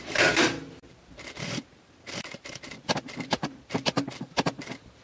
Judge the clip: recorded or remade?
remade